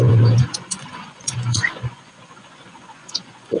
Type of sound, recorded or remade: remade